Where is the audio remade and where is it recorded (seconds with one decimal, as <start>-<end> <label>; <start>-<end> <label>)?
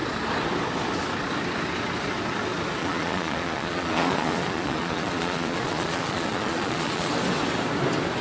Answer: 0.0-2.8 recorded; 2.8-7.1 remade; 7.1-8.2 recorded